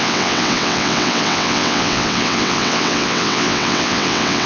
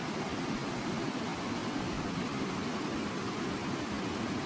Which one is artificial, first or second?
first